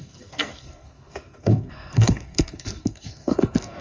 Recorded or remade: remade